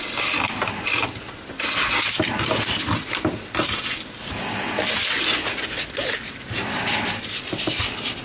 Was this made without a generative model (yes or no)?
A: yes